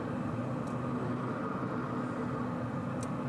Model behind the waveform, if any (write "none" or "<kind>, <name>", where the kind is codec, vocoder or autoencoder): none